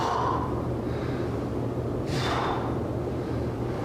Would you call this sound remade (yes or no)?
yes